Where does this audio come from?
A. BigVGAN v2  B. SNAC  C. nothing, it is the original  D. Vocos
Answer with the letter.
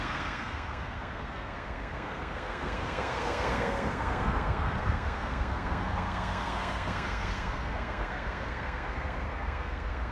B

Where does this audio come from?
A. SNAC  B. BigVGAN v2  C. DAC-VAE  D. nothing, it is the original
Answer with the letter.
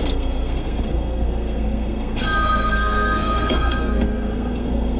A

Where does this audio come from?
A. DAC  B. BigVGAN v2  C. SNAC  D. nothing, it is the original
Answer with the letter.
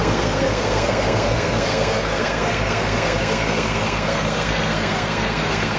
C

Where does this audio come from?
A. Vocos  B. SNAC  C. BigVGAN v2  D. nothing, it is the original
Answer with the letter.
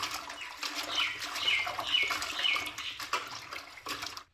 D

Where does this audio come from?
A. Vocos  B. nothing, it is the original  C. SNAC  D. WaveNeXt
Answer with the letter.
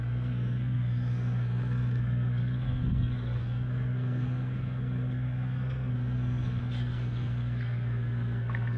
C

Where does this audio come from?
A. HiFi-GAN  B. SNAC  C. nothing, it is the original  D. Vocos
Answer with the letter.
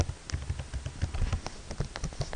C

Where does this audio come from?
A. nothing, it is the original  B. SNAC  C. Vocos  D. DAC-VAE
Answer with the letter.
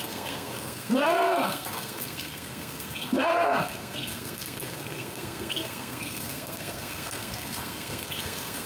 B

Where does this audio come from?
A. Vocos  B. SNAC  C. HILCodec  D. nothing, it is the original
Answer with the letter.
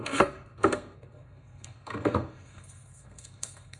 B